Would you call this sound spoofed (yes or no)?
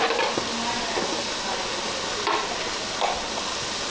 no